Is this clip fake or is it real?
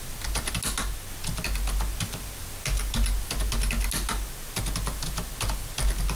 real